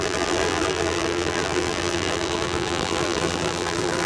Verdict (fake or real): fake